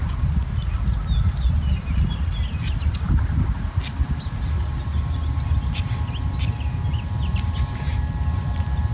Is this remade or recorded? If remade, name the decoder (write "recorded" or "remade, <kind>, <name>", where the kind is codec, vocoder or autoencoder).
recorded